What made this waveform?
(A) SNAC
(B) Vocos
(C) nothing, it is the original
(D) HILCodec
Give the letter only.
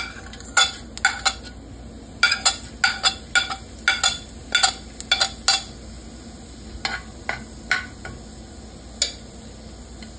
C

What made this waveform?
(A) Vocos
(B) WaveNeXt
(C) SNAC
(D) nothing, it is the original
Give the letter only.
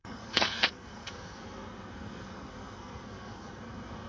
C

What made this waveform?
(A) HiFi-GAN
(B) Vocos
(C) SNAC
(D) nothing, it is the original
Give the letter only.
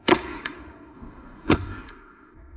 C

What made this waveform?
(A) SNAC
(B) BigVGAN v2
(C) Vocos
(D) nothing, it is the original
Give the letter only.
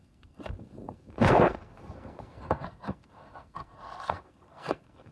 A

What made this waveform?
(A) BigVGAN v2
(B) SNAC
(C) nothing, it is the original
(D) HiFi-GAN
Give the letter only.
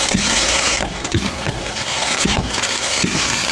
B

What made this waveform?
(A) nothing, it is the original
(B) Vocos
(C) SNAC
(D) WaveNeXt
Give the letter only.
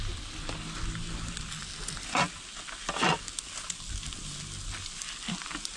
A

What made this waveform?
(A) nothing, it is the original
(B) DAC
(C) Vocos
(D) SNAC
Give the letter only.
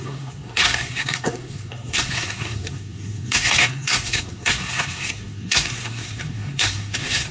D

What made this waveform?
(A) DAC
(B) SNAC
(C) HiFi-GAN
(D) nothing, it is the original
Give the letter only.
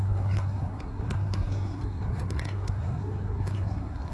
B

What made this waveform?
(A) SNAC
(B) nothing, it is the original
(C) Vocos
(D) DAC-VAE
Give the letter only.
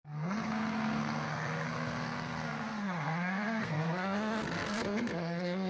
A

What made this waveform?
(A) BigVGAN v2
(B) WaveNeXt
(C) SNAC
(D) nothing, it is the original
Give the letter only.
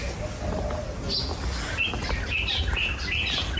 D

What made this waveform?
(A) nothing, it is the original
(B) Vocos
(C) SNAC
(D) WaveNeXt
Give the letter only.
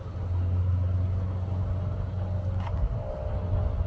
A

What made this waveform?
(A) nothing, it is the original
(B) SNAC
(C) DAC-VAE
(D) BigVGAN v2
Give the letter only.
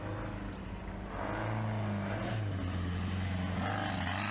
A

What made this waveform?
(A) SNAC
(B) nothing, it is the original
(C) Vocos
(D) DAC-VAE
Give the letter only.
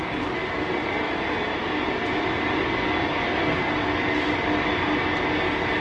B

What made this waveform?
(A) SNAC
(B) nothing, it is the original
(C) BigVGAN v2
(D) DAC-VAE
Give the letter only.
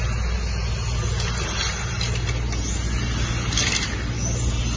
B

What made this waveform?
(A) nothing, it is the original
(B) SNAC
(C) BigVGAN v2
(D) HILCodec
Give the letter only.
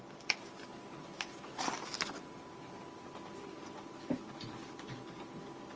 A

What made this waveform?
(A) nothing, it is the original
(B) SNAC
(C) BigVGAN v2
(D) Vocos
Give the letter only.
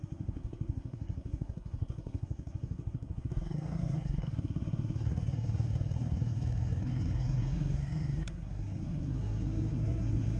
B